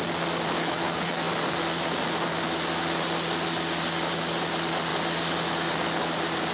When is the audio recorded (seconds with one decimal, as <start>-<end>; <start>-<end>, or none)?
0.0-0.6; 1.2-6.5